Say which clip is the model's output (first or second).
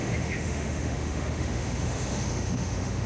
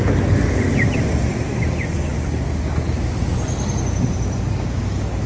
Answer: first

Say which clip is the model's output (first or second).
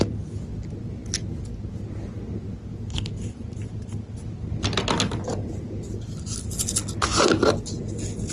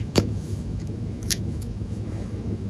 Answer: second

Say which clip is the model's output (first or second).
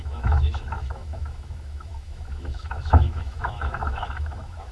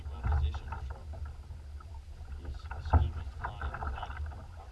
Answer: first